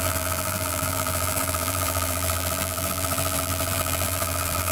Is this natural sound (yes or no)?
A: no